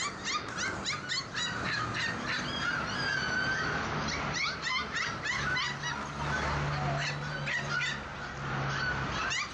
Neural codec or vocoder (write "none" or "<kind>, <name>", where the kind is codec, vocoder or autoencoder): none